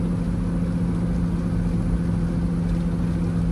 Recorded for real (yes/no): yes